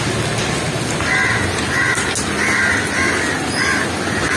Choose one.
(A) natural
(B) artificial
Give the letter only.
A